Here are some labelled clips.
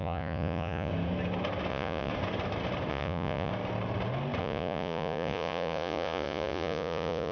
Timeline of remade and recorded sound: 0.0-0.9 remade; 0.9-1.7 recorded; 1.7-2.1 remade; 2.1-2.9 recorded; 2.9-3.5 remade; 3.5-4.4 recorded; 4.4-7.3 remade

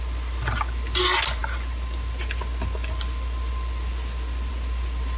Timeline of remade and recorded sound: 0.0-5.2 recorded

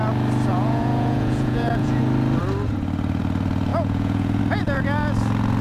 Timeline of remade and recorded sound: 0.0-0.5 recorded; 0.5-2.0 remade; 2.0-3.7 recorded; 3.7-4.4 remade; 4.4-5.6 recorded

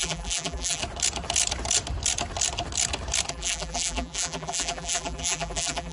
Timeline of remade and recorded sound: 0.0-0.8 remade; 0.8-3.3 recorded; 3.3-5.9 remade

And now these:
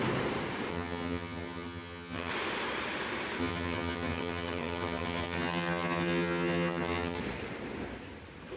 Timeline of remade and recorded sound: 0.0-0.7 recorded; 0.7-2.3 remade; 2.3-3.4 recorded; 3.4-7.2 remade; 7.2-8.6 recorded